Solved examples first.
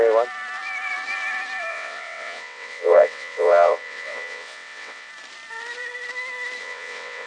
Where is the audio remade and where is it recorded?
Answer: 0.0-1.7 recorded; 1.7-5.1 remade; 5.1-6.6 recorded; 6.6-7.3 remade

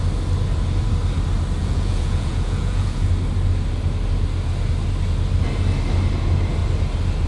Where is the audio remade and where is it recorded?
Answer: 0.0-1.6 recorded; 1.6-3.1 remade; 3.1-7.3 recorded

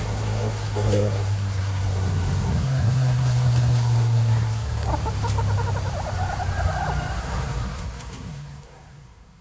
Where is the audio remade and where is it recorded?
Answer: 0.0-4.9 remade; 4.9-7.2 recorded; 7.2-9.4 remade